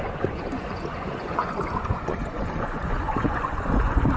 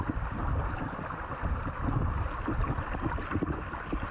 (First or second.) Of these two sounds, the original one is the second